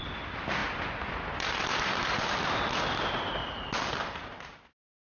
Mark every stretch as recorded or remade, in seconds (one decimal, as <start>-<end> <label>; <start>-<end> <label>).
0.0-5.0 recorded